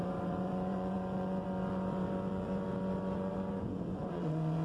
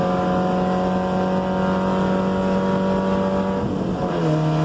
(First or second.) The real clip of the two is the second